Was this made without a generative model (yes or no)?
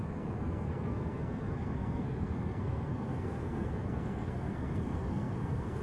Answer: no